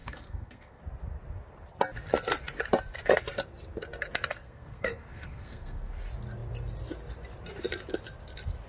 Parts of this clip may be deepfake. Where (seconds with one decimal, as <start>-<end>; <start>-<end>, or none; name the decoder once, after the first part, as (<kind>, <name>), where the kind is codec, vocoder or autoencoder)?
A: 0.0-0.8 (codec, SNAC); 4.4-5.9